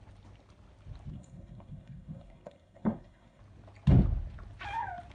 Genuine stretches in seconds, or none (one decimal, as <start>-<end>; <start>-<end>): 0.0-1.1; 3.4-5.1